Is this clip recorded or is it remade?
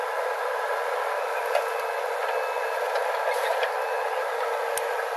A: recorded